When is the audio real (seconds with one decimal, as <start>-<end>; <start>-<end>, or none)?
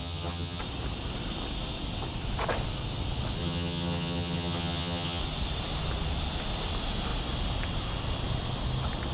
0.6-3.4; 5.2-9.1